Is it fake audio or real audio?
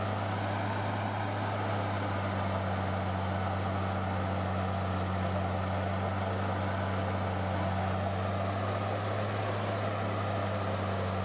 real